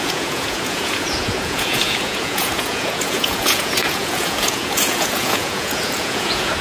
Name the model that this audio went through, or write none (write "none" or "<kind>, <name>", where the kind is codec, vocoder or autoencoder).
vocoder, Vocos